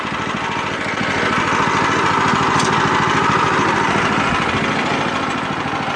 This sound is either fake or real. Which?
real